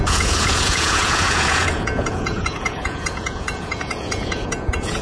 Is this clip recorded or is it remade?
remade